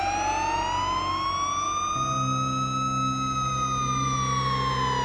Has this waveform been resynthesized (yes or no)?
no